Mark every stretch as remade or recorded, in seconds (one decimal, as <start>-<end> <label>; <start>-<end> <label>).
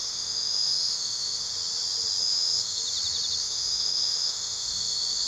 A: 0.0-1.5 remade; 1.5-2.2 recorded; 2.2-2.8 remade; 2.8-3.4 recorded; 3.4-5.3 remade